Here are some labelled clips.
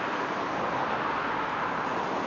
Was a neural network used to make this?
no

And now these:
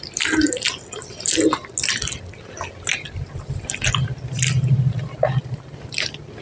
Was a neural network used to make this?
no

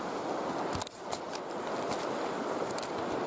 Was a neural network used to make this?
no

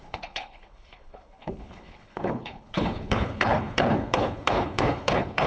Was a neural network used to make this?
yes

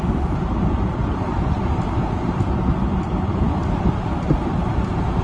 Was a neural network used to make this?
no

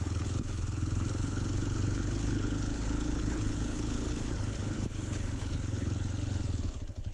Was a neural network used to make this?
yes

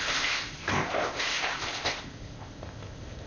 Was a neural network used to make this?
yes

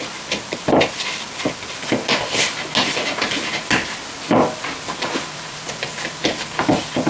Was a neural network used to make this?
no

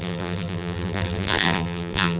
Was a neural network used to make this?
yes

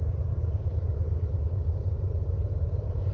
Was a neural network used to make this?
yes